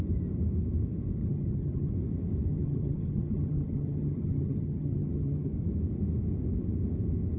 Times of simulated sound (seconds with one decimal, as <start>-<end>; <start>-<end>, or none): 1.2-1.9; 2.5-5.5